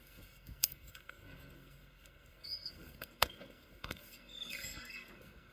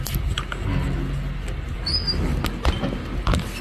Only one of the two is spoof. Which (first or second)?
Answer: first